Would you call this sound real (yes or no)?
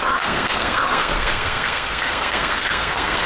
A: no